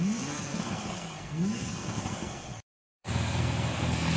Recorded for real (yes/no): no